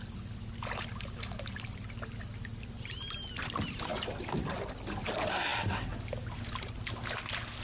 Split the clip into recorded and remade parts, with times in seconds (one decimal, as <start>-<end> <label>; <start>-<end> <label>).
0.0-7.6 recorded